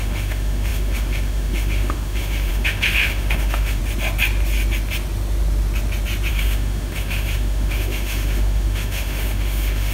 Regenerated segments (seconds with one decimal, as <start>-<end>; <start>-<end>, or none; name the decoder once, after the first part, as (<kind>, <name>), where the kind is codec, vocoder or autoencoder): 0.0-3.8 (autoencoder, DAC-VAE); 6.3-9.9